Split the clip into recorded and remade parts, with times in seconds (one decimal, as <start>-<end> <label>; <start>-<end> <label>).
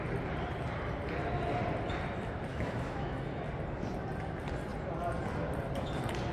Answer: 0.0-2.5 recorded; 2.5-3.4 remade; 3.4-6.3 recorded